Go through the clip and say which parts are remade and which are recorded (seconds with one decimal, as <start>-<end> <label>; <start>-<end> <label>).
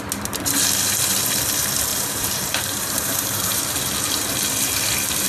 0.0-1.9 recorded; 1.9-3.6 remade; 3.6-5.3 recorded